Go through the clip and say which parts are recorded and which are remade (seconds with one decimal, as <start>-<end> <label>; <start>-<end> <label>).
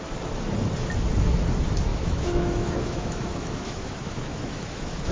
0.0-1.9 recorded; 1.9-5.1 remade